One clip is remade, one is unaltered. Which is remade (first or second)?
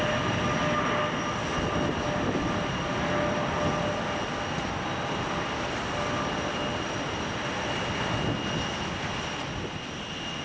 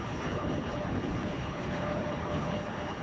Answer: second